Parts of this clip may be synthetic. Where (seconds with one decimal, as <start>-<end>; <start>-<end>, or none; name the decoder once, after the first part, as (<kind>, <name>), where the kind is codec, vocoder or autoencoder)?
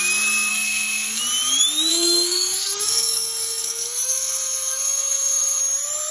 0.5-1.2 (codec, SNAC); 1.9-5.6